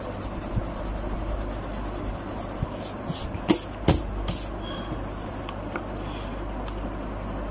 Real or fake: real